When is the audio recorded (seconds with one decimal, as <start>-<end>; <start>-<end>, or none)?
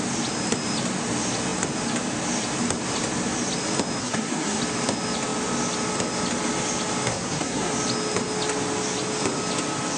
0.0-4.0; 4.6-7.1; 7.7-10.0